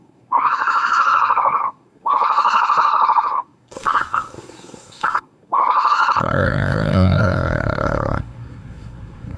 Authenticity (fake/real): fake